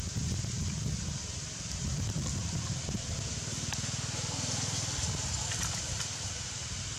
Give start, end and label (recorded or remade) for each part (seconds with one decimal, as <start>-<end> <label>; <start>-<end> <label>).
0.0-7.0 recorded